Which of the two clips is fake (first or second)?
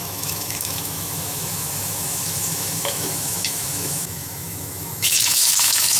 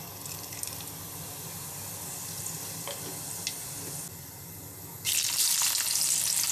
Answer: first